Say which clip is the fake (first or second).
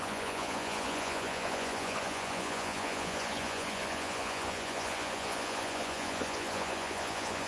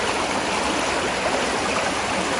first